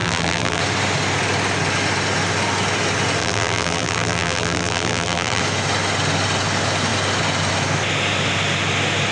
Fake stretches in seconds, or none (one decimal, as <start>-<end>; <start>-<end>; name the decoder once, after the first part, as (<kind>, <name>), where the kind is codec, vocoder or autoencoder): 0.0-0.6 (vocoder, BigVGAN v2); 3.2-5.4